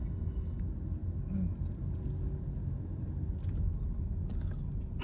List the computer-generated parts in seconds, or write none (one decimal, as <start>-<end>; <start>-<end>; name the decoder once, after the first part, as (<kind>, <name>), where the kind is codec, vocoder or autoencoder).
0.0-0.6 (autoencoder, DAC-VAE)